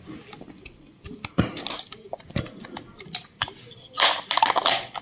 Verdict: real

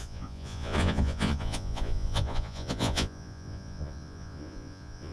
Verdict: fake